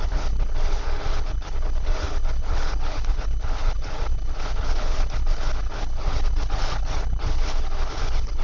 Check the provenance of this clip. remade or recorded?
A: remade